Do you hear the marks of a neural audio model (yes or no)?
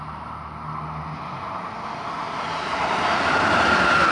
no